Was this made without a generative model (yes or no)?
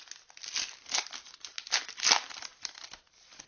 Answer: yes